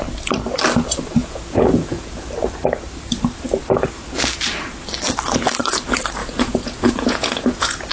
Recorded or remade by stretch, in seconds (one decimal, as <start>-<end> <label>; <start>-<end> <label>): 0.0-1.2 recorded; 1.2-2.3 remade; 2.3-6.2 recorded; 6.2-7.9 remade